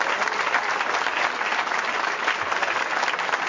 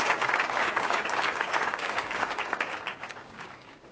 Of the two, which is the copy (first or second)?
second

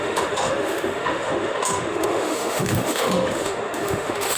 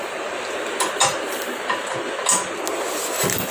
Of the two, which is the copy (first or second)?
first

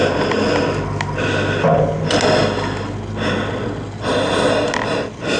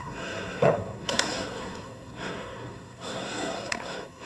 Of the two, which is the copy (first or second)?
second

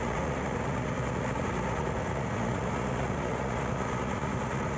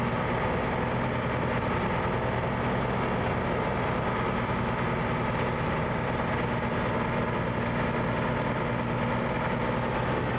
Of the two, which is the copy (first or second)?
first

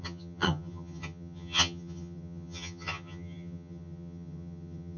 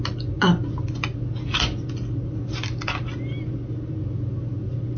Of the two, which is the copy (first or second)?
first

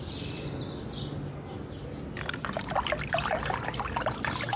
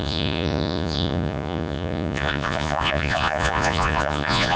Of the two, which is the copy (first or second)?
second